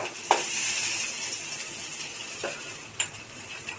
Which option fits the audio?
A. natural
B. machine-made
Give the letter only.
A